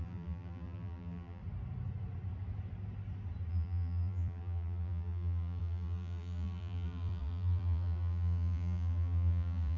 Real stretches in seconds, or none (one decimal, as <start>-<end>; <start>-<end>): 1.4-3.5